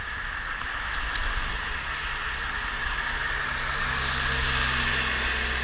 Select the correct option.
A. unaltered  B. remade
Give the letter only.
A